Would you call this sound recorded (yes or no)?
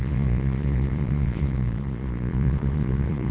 no